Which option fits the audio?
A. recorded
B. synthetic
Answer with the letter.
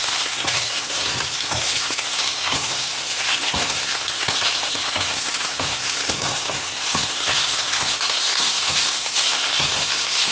B